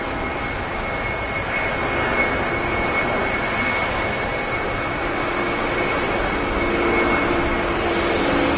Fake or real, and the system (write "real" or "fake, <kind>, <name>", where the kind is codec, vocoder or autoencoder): real